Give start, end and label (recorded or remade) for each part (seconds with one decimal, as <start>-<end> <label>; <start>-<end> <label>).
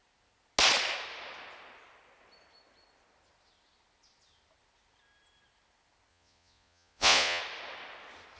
0.0-6.1 recorded; 6.1-7.4 remade; 7.4-8.4 recorded